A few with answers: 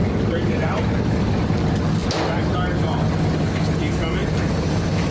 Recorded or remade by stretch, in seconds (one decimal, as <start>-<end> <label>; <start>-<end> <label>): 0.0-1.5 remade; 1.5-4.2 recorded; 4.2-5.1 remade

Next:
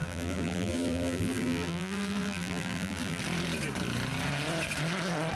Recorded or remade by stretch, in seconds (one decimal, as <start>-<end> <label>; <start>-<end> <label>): 0.0-3.2 remade; 3.2-5.3 recorded

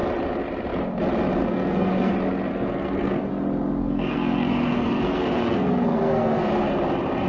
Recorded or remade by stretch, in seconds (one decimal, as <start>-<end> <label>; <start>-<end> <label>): 0.0-1.4 recorded; 1.4-2.1 remade; 2.1-2.5 recorded; 2.5-3.3 remade; 3.3-3.8 recorded; 3.8-6.5 remade; 6.5-7.3 recorded

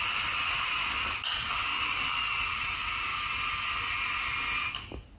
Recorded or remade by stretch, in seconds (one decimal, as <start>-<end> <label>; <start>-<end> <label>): 0.0-5.2 recorded

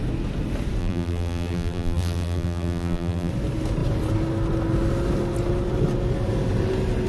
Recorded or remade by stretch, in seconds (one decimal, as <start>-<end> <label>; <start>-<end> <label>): 0.0-0.8 recorded; 0.8-3.3 remade; 3.3-7.1 recorded

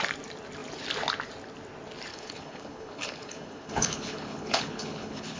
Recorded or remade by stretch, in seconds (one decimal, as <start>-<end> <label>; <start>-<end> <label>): 0.0-2.1 recorded; 2.1-5.4 remade

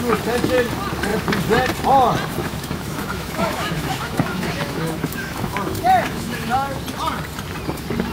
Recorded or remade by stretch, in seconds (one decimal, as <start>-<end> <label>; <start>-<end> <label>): 0.0-2.4 recorded; 2.4-6.8 remade; 6.8-8.1 recorded